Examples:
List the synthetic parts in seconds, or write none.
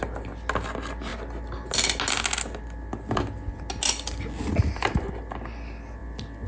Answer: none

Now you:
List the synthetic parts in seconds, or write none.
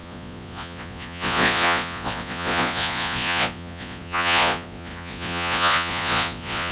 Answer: 0.0-6.7 (vocoder, Vocos)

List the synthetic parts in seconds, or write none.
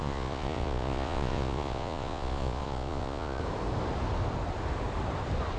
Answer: 0.0-3.4 (vocoder, Vocos)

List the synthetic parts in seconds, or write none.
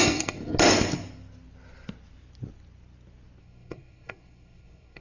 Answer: 0.0-0.4 (codec, SNAC); 3.4-5.0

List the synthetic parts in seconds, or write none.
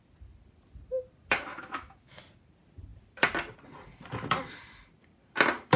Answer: 1.5-2.2 (autoencoder, DAC-VAE)